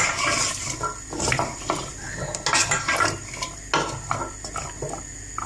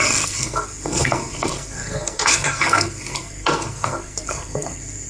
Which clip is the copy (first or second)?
second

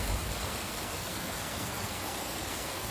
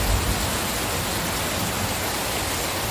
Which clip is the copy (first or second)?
first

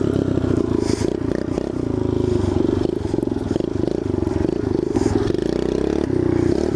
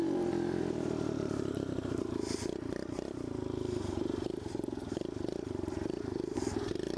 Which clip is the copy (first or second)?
second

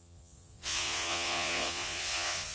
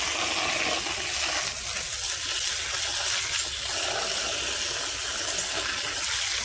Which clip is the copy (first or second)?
first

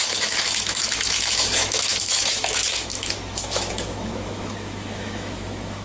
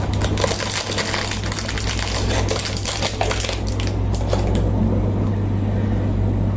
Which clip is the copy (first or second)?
first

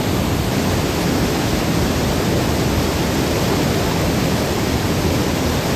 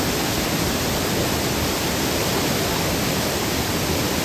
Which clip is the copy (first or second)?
second